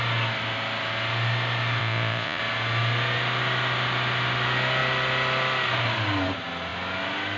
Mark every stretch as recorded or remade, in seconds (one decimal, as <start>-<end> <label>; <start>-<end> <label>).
0.0-1.8 recorded; 1.8-2.4 remade; 2.4-7.4 recorded